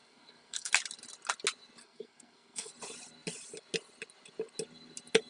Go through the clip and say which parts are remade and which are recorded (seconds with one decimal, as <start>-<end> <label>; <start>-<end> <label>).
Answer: 0.0-0.7 remade; 0.7-1.8 recorded; 1.8-2.7 remade; 2.7-5.3 recorded